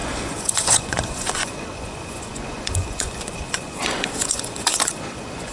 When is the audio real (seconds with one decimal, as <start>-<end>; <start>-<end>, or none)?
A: none